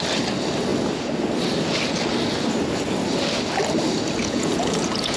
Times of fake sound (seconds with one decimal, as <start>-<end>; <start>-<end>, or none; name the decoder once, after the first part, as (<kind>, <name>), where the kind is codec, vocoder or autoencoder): 4.2-5.2 (vocoder, Vocos)